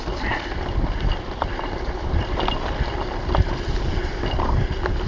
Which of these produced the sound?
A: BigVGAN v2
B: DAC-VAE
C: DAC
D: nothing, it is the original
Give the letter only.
D